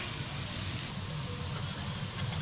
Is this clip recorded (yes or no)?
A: yes